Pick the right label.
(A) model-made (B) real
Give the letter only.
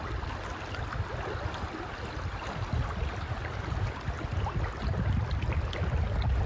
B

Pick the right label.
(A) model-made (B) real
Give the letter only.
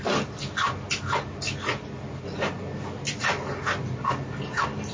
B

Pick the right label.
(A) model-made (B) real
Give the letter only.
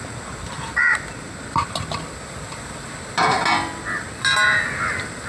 B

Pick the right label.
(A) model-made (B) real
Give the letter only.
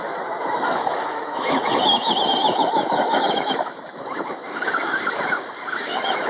A